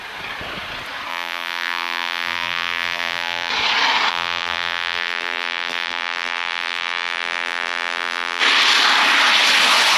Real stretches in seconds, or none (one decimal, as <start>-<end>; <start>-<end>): 0.0-1.1; 3.5-4.1; 8.4-10.0